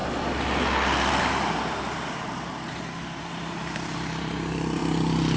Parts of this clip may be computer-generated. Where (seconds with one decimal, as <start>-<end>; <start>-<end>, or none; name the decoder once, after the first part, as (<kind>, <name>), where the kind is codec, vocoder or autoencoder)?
1.2-4.8 (vocoder, BigVGAN v2)